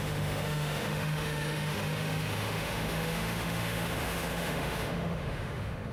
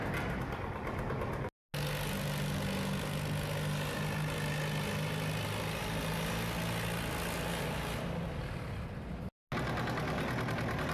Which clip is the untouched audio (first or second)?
second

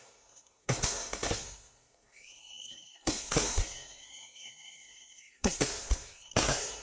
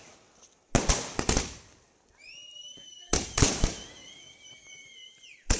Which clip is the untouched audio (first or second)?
second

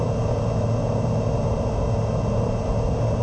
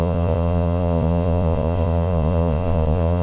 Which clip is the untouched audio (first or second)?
first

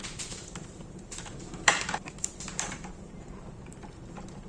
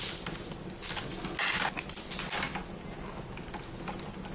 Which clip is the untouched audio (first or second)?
second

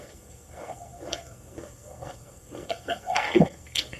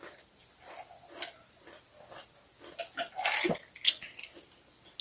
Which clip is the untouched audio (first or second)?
second